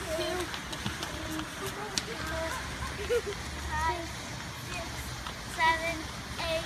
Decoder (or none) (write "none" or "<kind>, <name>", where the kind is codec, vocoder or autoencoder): none